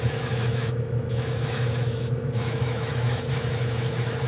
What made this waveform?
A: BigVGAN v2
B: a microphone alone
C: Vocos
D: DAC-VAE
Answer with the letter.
D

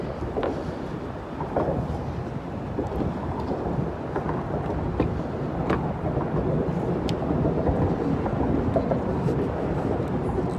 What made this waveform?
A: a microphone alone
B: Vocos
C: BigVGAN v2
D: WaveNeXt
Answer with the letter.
A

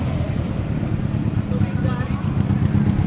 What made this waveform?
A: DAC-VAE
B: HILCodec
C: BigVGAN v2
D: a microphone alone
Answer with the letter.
C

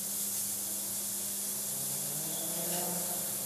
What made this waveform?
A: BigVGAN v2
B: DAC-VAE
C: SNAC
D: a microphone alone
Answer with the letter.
D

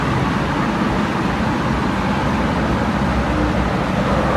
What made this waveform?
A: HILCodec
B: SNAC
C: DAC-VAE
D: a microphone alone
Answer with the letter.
D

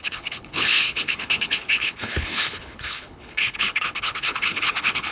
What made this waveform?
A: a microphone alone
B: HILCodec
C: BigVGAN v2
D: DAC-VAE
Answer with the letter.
B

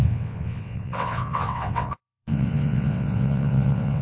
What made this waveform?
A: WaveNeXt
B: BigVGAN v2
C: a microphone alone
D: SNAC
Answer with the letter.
A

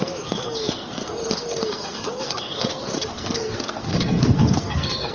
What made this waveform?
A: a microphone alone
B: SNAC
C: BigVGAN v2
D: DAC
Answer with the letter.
B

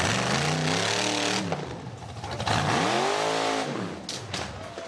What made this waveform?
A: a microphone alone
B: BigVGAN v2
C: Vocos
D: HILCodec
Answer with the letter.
A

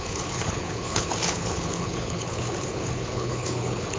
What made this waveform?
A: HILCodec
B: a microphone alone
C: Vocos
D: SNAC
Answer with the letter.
A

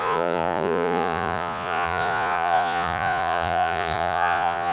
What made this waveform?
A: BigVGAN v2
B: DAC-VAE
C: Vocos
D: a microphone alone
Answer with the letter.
C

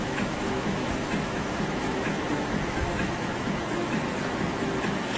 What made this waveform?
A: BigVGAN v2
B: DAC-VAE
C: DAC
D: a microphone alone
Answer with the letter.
B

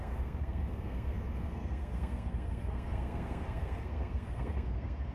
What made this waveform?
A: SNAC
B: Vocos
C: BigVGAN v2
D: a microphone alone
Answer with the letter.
A